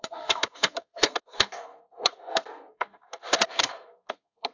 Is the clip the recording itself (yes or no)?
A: no